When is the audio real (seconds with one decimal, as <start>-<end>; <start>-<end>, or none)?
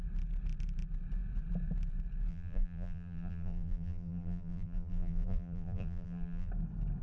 0.0-2.3; 6.5-7.0